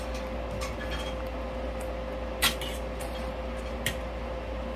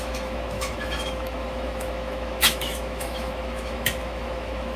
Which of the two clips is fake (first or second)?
second